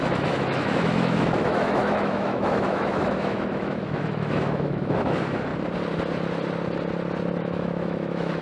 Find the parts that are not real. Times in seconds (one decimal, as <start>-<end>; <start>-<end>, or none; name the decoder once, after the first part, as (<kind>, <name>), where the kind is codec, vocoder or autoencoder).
0.0-5.5 (autoencoder, DAC-VAE); 7.4-8.4